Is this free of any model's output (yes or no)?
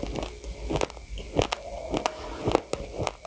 yes